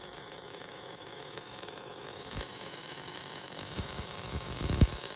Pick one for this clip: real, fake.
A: fake